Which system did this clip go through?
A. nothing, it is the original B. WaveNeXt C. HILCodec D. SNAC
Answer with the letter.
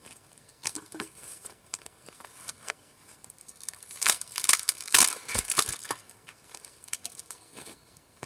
D